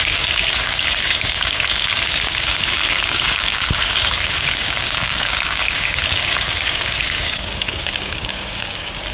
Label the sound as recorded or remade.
remade